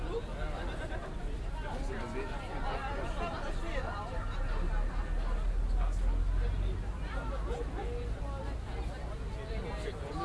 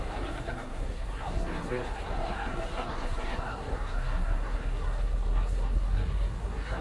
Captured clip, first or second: first